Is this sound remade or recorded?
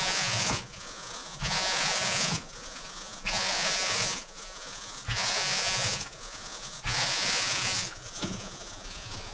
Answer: remade